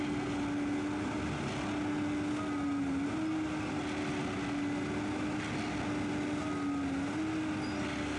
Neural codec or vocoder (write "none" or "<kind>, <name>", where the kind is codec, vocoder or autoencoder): none